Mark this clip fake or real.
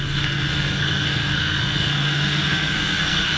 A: fake